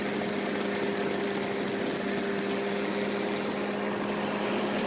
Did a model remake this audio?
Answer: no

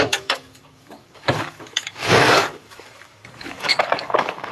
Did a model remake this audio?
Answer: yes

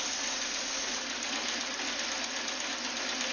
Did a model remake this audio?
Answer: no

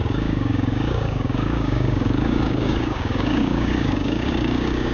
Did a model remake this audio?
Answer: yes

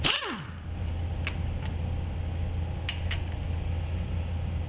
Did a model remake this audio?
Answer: no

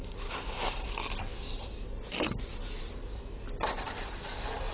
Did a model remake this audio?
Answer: no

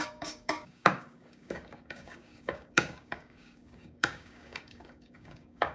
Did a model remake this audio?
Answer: yes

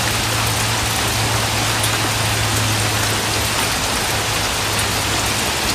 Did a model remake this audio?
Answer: no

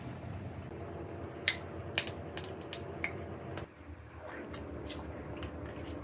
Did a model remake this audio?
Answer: no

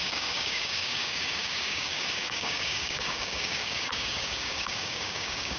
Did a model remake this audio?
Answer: yes